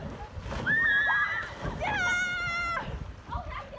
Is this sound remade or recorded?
recorded